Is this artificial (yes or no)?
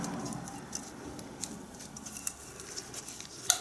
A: no